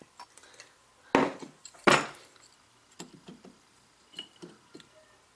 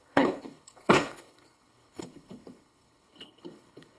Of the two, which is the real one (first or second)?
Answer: first